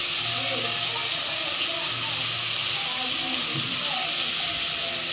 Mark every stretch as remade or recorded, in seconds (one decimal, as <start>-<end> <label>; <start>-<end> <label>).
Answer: 0.0-5.1 recorded